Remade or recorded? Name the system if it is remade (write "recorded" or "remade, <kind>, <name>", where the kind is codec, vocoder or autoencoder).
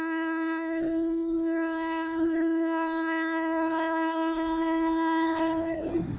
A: remade, codec, SNAC